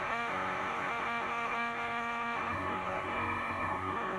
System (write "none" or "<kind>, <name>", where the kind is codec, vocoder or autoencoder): codec, SNAC